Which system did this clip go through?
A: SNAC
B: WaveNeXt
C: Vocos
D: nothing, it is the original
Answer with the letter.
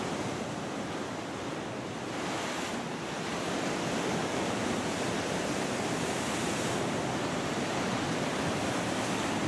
D